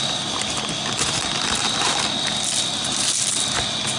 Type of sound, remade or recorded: recorded